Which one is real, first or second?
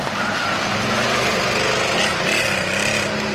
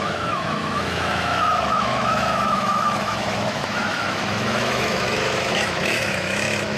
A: first